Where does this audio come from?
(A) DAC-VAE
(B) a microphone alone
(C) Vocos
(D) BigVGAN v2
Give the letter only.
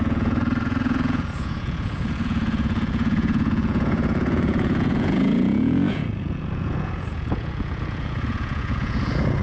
C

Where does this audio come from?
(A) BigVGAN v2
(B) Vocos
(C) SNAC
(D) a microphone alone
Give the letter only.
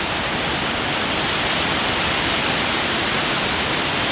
D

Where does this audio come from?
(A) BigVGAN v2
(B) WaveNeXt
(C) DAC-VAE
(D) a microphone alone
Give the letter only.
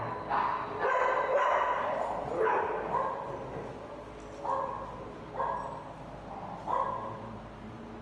D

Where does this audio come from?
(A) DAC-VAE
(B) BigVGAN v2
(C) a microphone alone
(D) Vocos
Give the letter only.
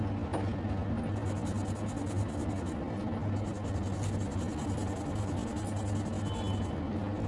C